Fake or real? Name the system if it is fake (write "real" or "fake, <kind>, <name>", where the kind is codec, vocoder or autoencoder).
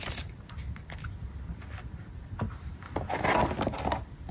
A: real